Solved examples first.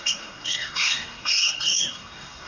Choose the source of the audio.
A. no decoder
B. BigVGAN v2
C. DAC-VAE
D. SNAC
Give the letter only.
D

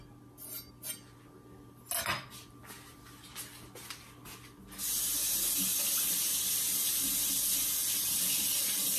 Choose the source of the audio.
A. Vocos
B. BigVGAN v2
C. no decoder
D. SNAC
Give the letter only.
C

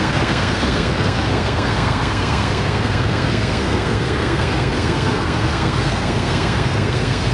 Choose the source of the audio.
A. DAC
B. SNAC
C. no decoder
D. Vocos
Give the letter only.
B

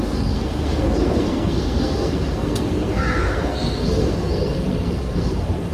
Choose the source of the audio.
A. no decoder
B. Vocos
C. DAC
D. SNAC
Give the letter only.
D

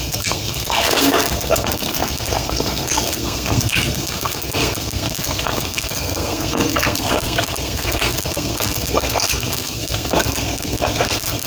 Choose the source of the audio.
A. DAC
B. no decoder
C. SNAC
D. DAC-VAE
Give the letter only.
C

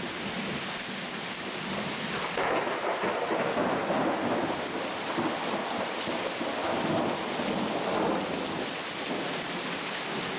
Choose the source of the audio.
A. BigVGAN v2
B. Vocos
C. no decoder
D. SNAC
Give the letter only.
C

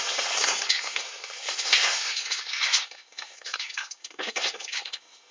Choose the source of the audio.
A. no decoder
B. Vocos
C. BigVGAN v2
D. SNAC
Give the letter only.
D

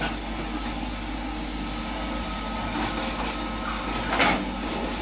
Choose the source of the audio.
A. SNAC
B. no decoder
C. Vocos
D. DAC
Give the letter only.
B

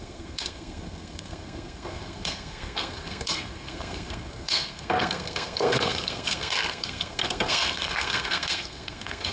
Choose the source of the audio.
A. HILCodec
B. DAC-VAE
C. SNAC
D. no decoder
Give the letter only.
C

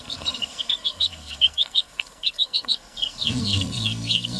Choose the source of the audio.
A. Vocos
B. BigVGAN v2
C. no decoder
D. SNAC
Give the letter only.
D